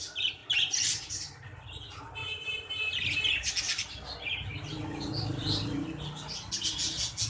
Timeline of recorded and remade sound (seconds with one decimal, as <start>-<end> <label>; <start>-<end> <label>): 0.0-0.4 recorded; 0.4-1.0 remade; 1.0-2.2 recorded; 2.2-2.7 remade; 2.7-5.4 recorded; 5.4-5.9 remade; 5.9-7.3 recorded